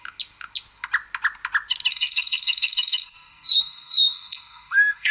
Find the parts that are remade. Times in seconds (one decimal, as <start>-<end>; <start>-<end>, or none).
1.9-5.1